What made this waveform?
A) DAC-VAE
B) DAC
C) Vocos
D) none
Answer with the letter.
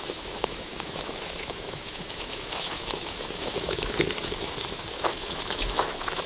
A